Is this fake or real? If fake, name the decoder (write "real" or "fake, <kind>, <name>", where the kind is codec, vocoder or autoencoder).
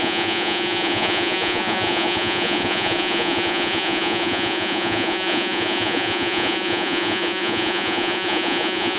fake, vocoder, Vocos